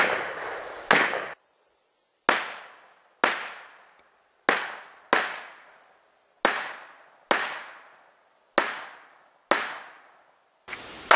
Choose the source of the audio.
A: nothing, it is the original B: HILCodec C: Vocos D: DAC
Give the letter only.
A